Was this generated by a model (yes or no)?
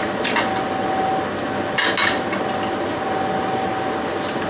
no